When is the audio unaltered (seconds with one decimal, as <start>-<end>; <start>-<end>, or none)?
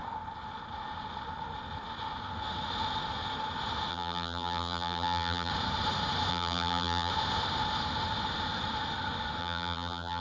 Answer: 0.0-3.9; 5.5-6.3; 7.1-9.4